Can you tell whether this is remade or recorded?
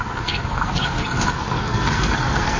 remade